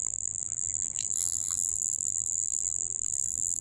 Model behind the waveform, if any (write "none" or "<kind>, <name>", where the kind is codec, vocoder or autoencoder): vocoder, BigVGAN v2